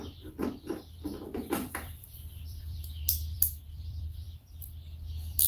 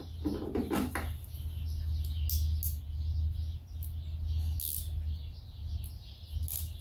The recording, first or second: second